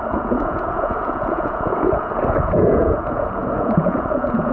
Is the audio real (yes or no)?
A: no